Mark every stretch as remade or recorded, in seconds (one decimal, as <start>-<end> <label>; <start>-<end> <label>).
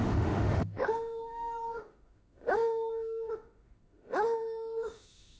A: 0.0-5.4 remade